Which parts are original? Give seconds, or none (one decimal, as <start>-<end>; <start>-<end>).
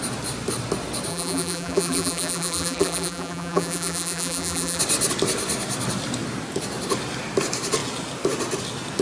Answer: 0.0-1.1; 4.8-9.0